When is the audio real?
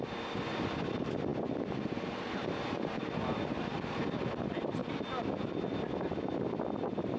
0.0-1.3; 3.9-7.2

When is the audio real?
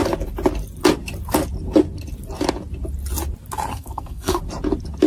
0.0-3.7; 4.4-5.1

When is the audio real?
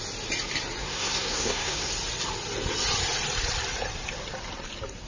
0.0-0.8; 1.9-5.1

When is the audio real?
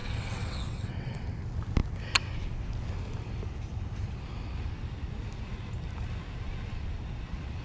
1.2-7.6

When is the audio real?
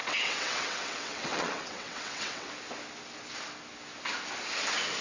2.5-5.0